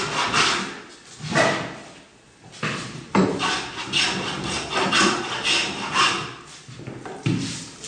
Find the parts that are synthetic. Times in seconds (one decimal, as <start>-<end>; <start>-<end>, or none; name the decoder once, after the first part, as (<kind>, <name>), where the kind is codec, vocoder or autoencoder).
none